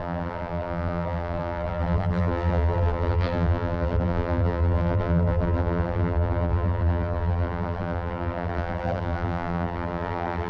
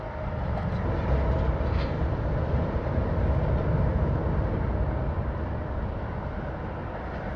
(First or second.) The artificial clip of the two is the first